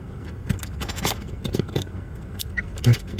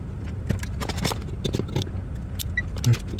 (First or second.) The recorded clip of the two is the second